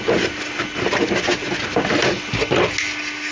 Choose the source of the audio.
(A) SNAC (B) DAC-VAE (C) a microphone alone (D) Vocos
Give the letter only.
C